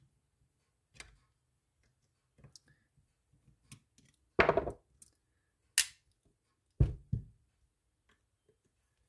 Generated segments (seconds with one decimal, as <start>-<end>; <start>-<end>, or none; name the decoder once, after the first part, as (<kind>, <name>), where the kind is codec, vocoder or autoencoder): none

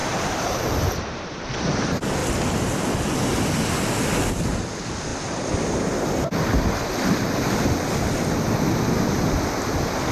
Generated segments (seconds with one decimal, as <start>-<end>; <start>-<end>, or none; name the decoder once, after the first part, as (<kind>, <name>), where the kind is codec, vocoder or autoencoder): 0.0-1.5 (vocoder, BigVGAN v2)

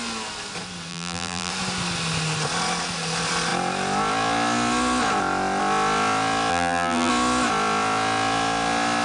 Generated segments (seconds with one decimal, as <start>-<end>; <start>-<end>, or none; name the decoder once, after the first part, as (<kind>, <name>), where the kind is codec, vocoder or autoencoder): 0.9-1.5 (vocoder, BigVGAN v2); 6.5-7.1

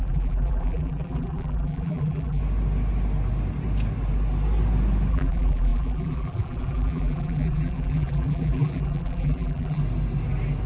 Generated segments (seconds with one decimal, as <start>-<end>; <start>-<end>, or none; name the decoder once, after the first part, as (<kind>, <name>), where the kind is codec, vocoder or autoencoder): 0.0-2.4 (vocoder, BigVGAN v2); 5.1-9.8

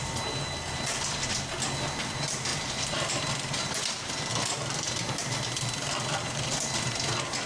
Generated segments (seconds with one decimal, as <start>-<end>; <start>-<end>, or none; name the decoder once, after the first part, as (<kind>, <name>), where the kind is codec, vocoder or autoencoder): 4.3-5.2 (vocoder, BigVGAN v2)